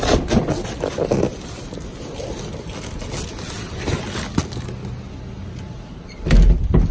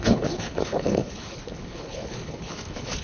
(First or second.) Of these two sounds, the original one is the first